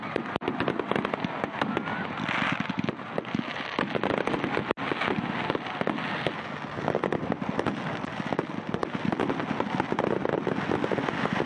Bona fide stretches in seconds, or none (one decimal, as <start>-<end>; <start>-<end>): 0.0-11.5